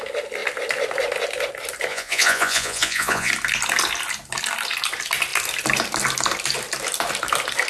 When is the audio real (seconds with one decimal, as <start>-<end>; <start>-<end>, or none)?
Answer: 0.0-1.9; 3.3-7.7